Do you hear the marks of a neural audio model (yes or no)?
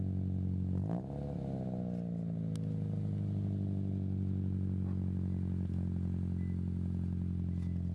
no